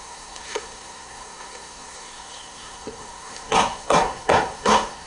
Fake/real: fake